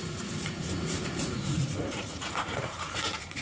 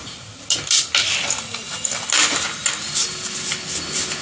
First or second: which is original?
second